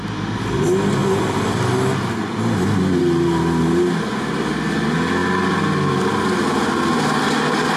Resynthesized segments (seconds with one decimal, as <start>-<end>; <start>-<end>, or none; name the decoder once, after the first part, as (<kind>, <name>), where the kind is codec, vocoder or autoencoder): none